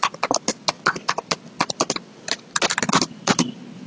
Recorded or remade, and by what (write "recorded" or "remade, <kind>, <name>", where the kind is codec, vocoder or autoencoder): recorded